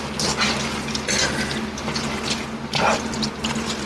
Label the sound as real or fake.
real